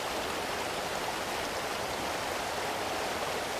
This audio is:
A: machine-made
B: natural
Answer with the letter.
B